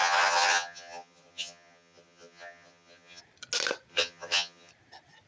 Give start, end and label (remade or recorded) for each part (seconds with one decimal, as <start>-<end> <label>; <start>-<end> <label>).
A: 0.0-3.2 remade; 3.2-3.9 recorded; 3.9-4.7 remade; 4.7-5.3 recorded